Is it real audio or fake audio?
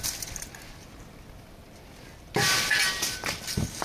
real